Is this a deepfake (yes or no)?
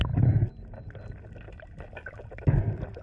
no